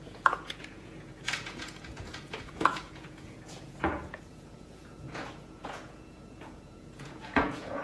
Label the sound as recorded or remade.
remade